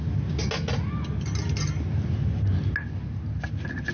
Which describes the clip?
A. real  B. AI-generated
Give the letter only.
A